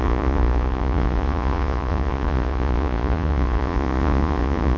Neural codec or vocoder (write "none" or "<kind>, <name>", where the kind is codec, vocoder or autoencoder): vocoder, Vocos